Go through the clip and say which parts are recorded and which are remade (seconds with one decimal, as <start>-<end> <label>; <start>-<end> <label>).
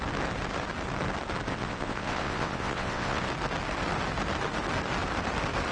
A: 0.0-1.5 recorded; 1.5-3.2 remade; 3.2-5.7 recorded